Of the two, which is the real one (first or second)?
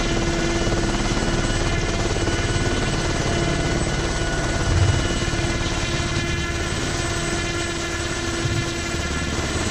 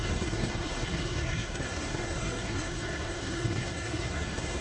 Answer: first